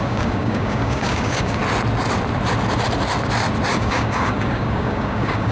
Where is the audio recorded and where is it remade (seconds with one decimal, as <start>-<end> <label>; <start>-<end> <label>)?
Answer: 0.0-1.6 remade; 1.6-3.7 recorded; 3.7-5.5 remade